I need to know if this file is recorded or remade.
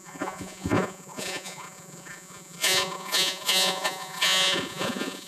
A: remade